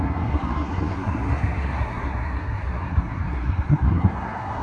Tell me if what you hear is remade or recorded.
remade